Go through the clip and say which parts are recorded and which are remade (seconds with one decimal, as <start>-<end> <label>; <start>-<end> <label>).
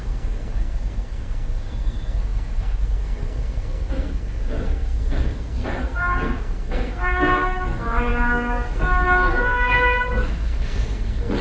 0.0-11.4 remade